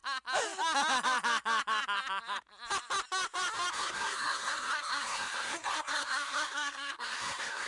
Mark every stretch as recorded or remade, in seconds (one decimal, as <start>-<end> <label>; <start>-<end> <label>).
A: 0.0-3.7 recorded; 3.7-7.7 remade